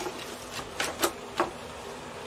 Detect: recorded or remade recorded